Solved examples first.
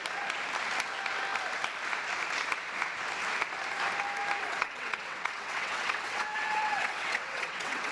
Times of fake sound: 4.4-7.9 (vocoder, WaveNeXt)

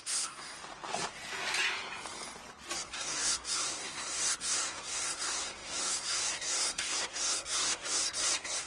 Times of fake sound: 0.0-0.5 (codec, SNAC); 2.9-8.7